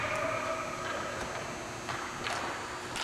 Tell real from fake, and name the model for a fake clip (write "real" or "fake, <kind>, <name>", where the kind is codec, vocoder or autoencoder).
real